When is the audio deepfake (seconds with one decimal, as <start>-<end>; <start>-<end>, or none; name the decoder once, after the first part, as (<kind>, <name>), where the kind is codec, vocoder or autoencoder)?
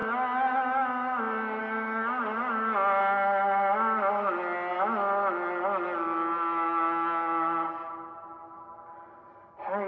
none